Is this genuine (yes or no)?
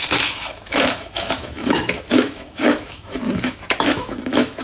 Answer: no